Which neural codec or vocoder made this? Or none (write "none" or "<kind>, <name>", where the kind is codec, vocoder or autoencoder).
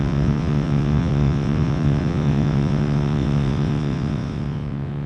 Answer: vocoder, WaveNeXt